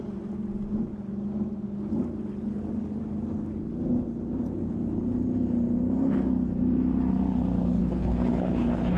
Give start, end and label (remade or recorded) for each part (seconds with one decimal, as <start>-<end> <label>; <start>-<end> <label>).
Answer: 0.0-7.8 recorded; 7.8-9.0 remade